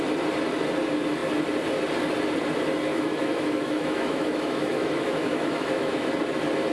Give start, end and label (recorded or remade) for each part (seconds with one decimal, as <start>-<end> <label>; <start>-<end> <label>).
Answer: 0.0-2.9 recorded; 2.9-6.1 remade; 6.1-6.7 recorded